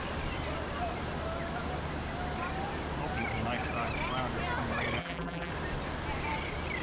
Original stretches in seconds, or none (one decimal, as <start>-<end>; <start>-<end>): 0.0-5.0; 5.5-6.8